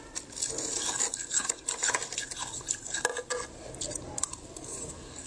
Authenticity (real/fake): real